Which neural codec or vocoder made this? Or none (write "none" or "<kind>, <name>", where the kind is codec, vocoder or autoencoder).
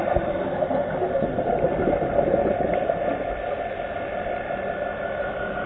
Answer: none